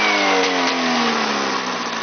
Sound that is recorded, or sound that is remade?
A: recorded